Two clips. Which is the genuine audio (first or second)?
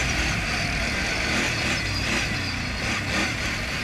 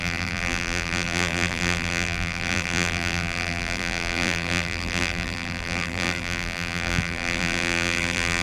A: first